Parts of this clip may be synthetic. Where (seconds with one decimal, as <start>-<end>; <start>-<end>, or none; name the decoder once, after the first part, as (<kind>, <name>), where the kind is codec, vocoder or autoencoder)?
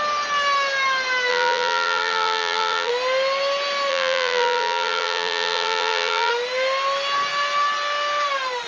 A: 1.3-2.9 (vocoder, BigVGAN v2); 3.9-6.3